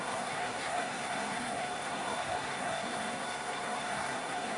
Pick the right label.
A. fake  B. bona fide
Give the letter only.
A